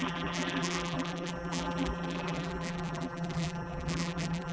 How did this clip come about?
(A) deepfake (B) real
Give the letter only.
A